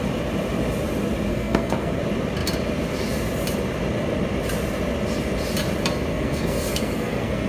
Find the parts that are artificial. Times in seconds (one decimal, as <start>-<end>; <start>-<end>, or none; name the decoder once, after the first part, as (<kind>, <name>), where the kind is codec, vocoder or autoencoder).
1.3-2.0 (codec, SNAC); 6.1-7.5